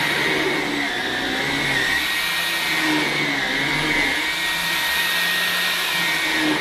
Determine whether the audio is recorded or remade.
recorded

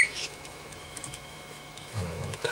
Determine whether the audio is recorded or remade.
remade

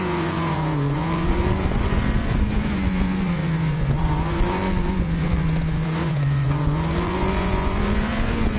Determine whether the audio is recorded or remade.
remade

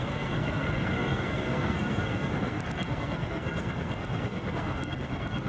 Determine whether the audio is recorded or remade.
remade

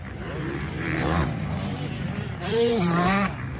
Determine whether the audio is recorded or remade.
remade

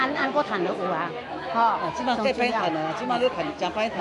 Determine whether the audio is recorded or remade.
remade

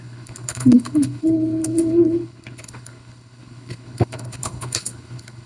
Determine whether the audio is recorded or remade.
remade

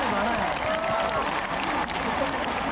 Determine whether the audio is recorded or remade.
recorded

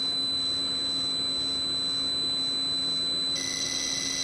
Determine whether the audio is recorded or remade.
recorded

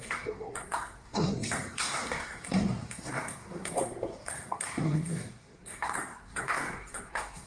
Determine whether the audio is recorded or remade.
remade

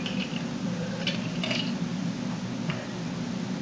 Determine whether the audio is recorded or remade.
recorded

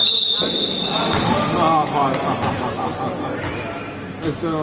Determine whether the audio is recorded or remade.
recorded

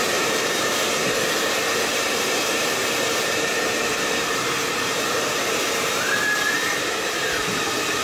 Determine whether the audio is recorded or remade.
remade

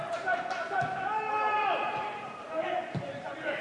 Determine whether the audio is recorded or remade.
recorded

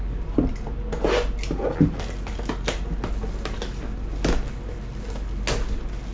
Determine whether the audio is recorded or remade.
recorded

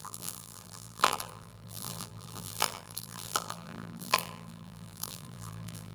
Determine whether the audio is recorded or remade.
remade